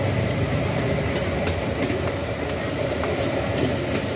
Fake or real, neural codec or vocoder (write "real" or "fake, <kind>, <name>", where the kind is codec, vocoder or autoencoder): real